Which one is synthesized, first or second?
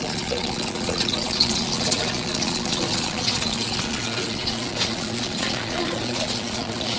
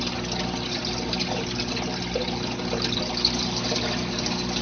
first